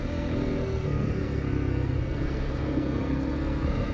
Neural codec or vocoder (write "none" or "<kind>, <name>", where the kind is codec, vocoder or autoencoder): codec, SNAC